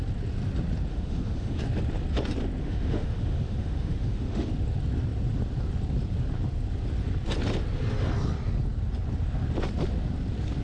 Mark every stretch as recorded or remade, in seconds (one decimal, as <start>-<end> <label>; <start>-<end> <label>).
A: 0.0-0.9 recorded; 0.9-1.6 remade; 1.6-2.6 recorded; 2.6-4.5 remade; 4.5-10.6 recorded